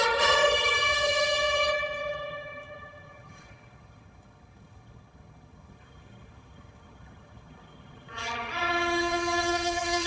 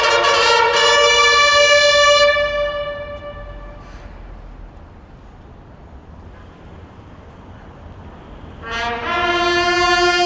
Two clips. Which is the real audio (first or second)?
second